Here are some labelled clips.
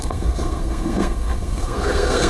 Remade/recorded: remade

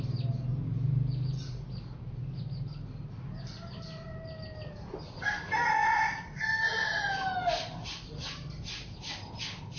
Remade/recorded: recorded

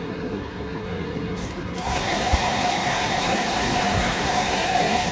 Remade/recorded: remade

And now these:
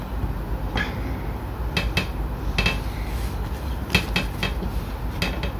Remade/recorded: recorded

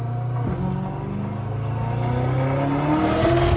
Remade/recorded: recorded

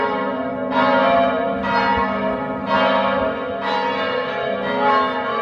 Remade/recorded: recorded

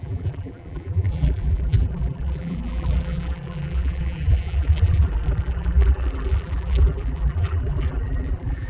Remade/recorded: remade